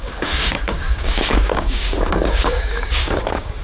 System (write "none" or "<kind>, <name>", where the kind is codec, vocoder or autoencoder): codec, DAC